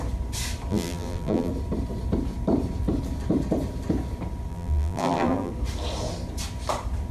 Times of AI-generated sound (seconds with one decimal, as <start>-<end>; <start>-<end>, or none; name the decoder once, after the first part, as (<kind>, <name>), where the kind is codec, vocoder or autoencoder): 0.7-1.5 (vocoder, BigVGAN v2); 4.5-5.5